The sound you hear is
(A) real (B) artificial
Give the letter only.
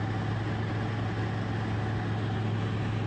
A